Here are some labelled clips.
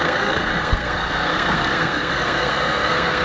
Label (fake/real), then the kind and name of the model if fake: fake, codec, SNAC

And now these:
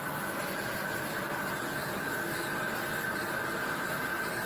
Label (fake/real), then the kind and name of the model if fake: real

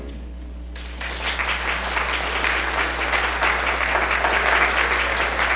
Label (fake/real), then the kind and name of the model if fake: real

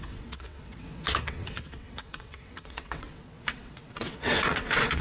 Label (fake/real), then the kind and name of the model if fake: fake, vocoder, WaveNeXt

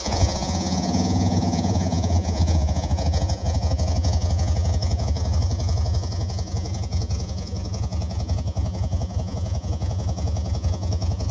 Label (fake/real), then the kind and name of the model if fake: fake, vocoder, Vocos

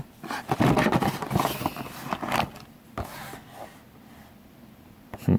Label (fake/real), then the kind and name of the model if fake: real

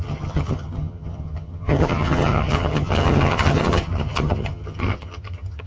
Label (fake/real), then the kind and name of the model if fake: fake, vocoder, HiFi-GAN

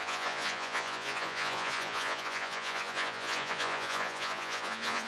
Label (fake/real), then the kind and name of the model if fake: fake, vocoder, Vocos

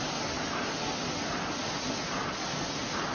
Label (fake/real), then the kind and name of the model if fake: real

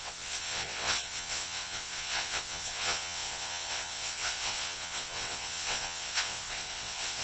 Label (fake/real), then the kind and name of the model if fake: fake, vocoder, WaveNeXt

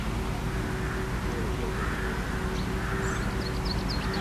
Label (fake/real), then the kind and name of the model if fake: real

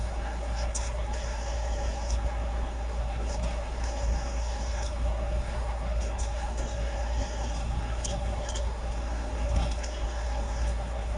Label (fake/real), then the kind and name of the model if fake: fake, codec, SNAC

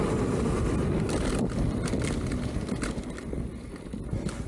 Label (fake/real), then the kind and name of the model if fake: real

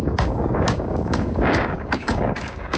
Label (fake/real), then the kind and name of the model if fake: fake, codec, DAC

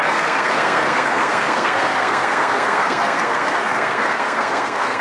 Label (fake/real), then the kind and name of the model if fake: fake, codec, SNAC